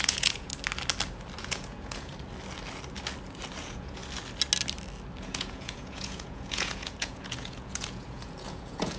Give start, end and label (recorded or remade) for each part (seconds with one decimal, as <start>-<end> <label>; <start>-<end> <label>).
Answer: 0.0-0.5 remade; 0.5-1.4 recorded; 1.4-2.1 remade; 2.1-3.6 recorded; 3.6-4.0 remade; 4.0-5.2 recorded; 5.2-9.0 remade